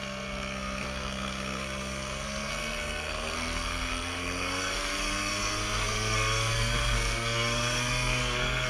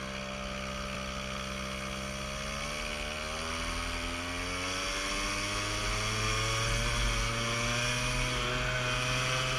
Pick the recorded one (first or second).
second